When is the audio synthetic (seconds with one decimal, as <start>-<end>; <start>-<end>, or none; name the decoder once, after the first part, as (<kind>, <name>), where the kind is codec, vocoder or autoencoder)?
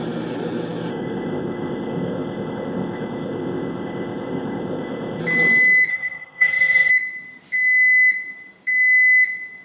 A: 0.9-5.2 (codec, ZipCodec); 5.9-6.9